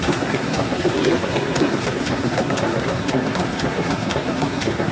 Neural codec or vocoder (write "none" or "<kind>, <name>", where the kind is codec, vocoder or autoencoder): codec, SNAC